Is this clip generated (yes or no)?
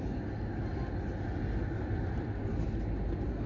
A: no